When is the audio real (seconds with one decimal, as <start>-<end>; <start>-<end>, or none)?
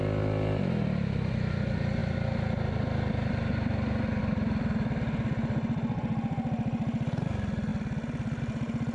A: 0.0-8.9